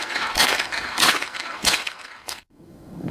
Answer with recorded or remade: remade